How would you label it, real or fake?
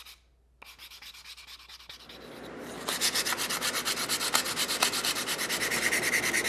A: real